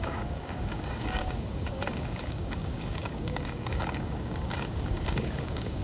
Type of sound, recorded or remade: remade